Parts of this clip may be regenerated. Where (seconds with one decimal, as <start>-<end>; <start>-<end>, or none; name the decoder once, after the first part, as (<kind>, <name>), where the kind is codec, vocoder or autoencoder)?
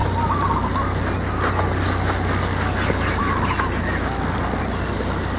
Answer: none